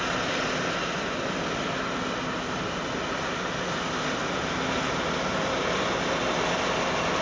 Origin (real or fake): real